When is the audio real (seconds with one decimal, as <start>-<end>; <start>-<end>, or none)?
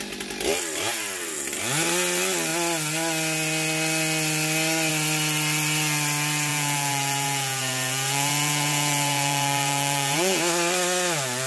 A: 0.0-6.5; 10.4-11.5